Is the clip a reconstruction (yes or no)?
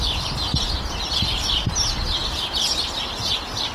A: no